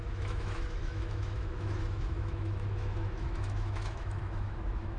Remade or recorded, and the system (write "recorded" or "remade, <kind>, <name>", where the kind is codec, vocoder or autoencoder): remade, autoencoder, DAC-VAE